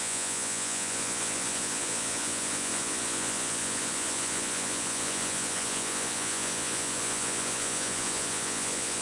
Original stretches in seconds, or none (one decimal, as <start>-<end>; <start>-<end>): none

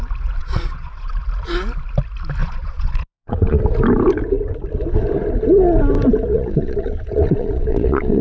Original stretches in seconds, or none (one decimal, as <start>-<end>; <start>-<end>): 0.0-0.4; 1.1-2.4; 3.6-6.3